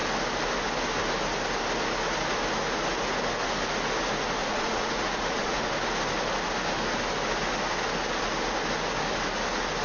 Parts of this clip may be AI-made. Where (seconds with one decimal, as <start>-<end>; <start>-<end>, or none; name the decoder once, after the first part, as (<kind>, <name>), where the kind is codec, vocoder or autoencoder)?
4.4-5.7 (vocoder, Vocos)